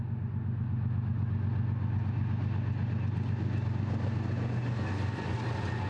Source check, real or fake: real